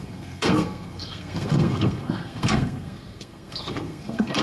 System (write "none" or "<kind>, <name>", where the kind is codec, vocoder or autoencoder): codec, SNAC